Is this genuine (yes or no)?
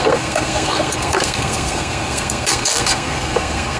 no